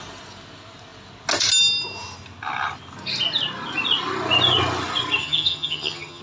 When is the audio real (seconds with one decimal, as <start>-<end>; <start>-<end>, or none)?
0.0-5.2